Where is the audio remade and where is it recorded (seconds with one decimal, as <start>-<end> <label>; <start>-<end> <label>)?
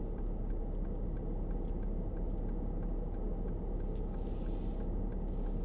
0.0-5.6 recorded